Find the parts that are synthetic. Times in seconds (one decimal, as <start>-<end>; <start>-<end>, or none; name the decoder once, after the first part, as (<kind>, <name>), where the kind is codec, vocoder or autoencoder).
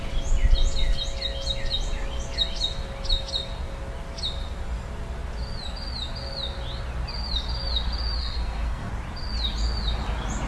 8.2-8.9 (codec, SNAC)